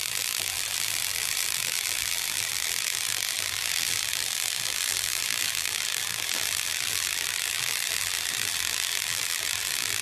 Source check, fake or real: fake